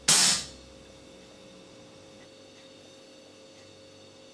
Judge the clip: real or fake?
real